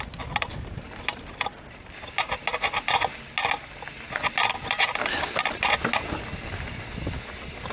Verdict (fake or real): real